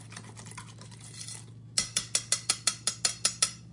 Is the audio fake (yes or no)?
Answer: no